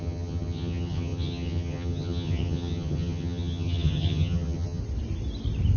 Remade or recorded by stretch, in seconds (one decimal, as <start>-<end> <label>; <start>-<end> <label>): 0.0-4.8 remade; 4.8-5.8 recorded